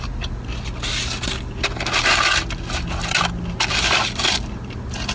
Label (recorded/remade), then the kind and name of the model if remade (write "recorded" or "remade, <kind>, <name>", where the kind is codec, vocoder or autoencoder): recorded